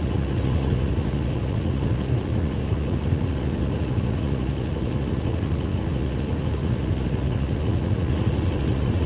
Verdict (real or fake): fake